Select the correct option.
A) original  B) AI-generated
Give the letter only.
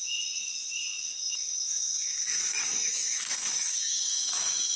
B